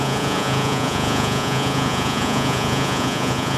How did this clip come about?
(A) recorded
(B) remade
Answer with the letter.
B